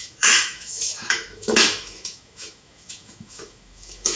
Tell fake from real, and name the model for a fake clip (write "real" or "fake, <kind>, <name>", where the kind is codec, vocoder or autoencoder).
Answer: fake, autoencoder, DAC-VAE